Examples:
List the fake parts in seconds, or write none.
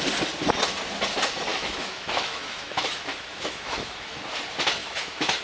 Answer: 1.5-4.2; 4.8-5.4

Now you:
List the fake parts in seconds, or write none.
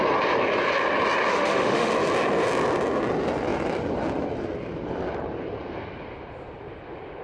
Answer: 1.3-1.9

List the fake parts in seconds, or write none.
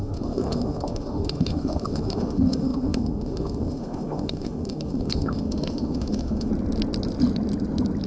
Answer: 0.0-6.5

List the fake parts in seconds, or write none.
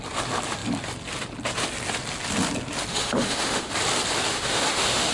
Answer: 2.9-3.7; 4.3-5.1